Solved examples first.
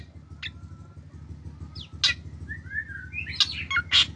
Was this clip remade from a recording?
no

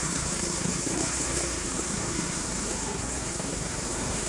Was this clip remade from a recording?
yes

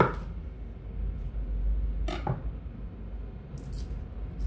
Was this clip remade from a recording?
no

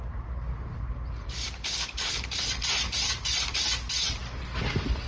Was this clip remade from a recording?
no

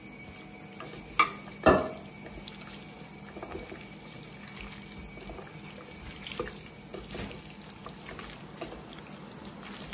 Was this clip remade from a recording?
no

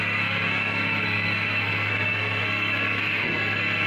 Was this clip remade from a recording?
yes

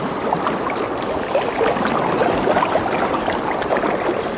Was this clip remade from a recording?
no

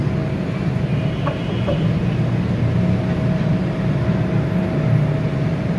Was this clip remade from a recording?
no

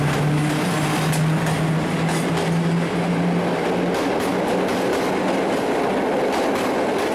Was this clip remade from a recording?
no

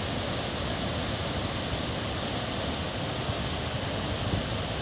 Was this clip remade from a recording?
no